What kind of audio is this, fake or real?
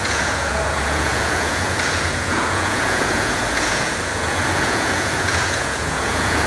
fake